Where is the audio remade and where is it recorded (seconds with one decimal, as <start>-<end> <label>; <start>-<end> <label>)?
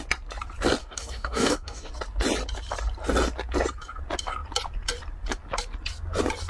0.0-0.8 recorded; 0.8-1.9 remade; 1.9-6.5 recorded